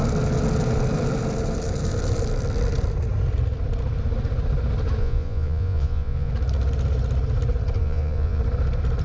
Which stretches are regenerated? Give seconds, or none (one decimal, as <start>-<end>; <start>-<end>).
5.0-6.3; 7.8-8.4

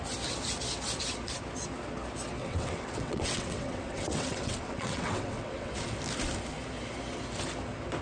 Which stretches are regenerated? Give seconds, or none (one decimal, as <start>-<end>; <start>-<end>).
2.4-5.7

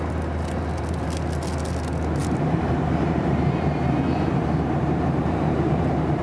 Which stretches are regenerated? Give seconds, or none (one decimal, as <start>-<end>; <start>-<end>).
2.2-6.2